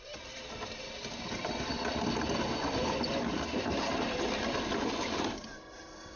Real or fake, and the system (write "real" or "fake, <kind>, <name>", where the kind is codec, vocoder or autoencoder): real